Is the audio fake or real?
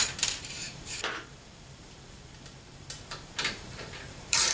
fake